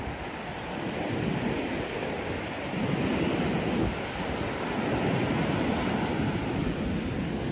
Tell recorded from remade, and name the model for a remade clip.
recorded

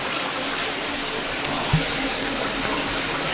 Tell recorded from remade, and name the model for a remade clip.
recorded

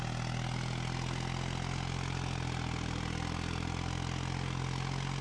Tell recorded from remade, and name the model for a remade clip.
recorded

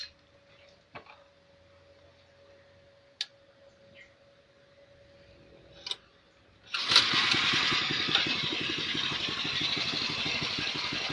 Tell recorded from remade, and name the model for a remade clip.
recorded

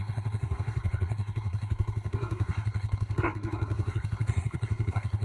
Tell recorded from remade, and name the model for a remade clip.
remade, codec, SNAC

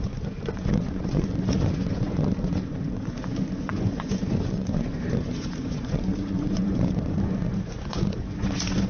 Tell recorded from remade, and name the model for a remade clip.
remade, vocoder, Vocos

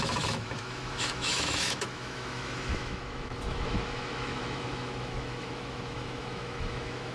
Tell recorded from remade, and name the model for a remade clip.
remade, autoencoder, DAC-VAE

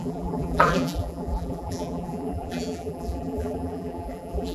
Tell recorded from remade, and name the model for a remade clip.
remade, vocoder, BigVGAN v2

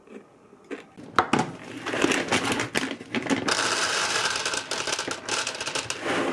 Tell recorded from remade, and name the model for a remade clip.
recorded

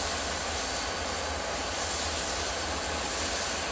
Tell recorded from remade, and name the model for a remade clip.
recorded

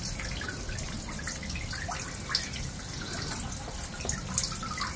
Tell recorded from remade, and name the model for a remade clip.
recorded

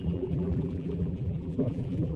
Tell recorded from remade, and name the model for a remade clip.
remade, vocoder, BigVGAN v2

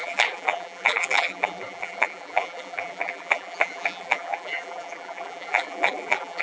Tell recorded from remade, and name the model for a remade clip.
remade, vocoder, BigVGAN v2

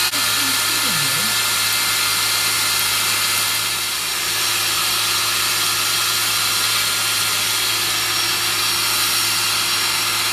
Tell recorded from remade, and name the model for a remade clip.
recorded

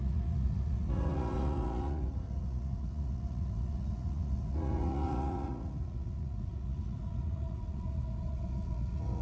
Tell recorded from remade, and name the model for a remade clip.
remade, vocoder, Vocos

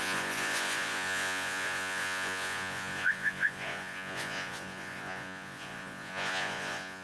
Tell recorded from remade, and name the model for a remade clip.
remade, vocoder, Vocos